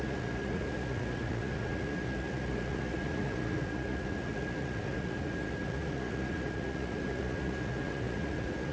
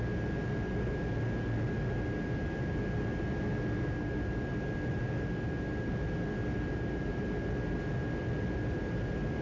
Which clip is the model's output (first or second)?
first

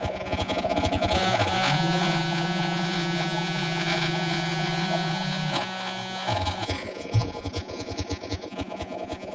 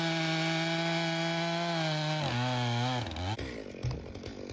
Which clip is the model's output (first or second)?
first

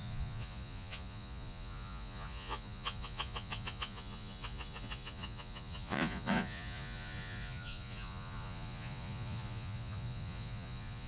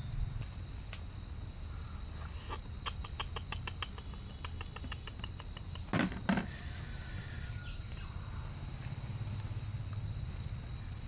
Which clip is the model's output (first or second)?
first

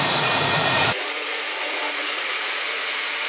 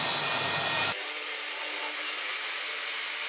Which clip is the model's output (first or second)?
first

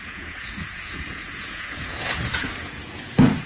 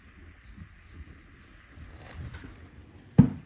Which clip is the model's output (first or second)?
first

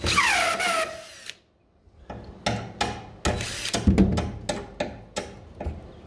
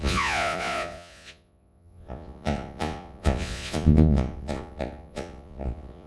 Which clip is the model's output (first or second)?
second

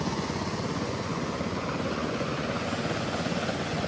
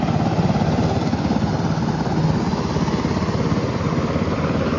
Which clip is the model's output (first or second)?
first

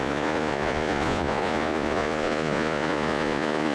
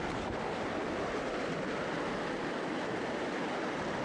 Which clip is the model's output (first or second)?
first